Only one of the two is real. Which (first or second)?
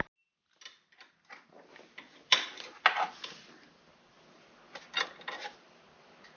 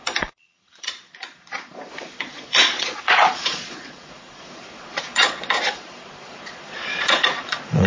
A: first